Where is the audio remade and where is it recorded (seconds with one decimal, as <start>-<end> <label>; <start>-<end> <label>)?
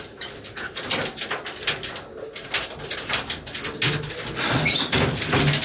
0.0-1.0 remade; 1.0-4.4 recorded; 4.4-5.6 remade